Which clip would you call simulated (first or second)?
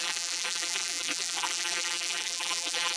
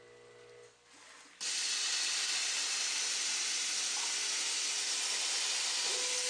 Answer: first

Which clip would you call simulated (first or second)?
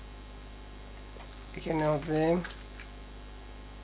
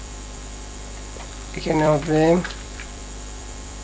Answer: second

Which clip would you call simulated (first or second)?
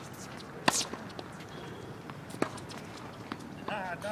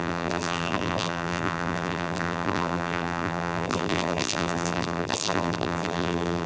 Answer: second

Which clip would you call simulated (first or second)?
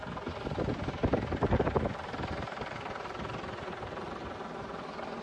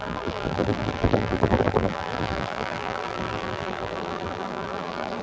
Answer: second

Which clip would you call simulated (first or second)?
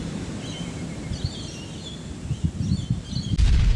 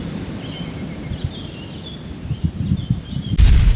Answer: second